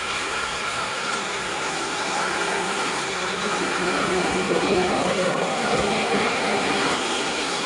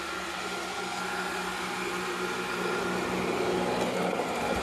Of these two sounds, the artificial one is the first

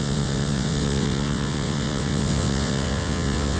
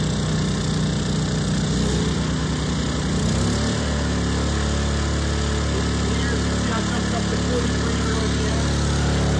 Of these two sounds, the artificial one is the first